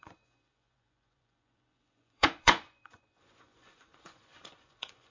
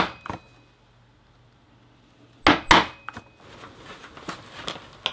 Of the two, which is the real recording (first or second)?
second